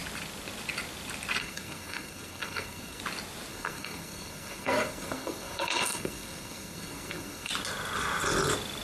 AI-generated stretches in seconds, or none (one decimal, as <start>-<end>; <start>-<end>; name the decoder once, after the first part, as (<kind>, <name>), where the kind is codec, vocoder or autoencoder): 1.4-3.0 (codec, SNAC); 3.5-7.5